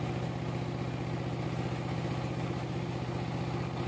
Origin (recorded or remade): recorded